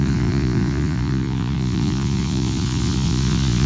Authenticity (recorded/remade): remade